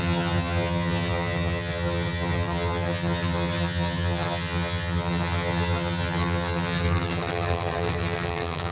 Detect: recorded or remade remade